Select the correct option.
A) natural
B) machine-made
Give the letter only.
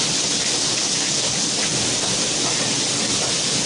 A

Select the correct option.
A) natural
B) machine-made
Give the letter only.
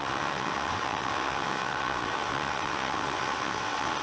B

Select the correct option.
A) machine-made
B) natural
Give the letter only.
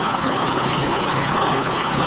A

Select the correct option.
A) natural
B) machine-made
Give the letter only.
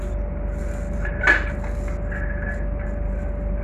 A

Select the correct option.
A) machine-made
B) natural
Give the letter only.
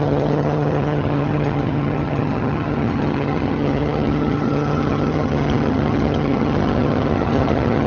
A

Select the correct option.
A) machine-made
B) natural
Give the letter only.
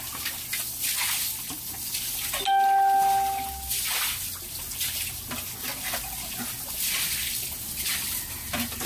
B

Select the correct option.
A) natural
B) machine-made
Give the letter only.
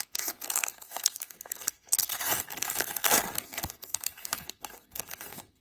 B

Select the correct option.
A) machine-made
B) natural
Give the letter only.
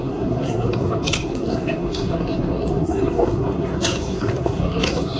A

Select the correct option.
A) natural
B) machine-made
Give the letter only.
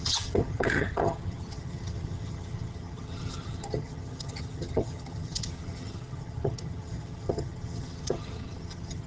B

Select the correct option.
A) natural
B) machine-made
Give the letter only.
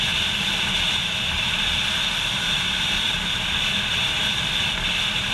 A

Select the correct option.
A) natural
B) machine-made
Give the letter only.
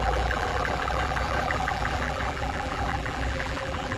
B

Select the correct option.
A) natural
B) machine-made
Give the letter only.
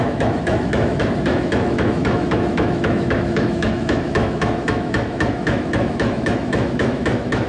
B